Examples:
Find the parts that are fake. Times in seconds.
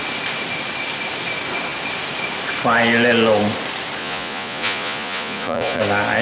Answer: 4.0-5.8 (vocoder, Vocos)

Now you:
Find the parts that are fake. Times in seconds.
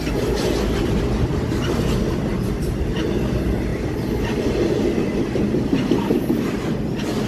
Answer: none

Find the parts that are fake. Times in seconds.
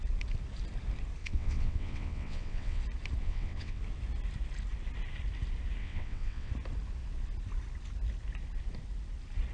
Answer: 1.2-2.8 (vocoder, WaveNeXt); 3.2-3.8; 5.8-6.5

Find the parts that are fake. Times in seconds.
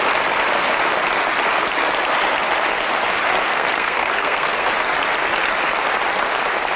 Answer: 3.5-4.7 (codec, SNAC)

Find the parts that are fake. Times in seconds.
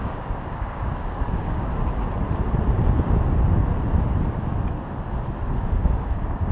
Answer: 0.0-1.7 (codec, DAC); 5.6-6.5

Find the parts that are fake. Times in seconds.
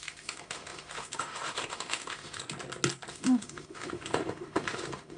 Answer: 0.0-2.4 (autoencoder, DAC-VAE); 3.1-5.2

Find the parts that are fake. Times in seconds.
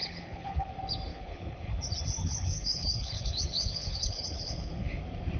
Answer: 0.0-0.7 (codec, HILCodec); 1.1-1.8; 2.2-5.0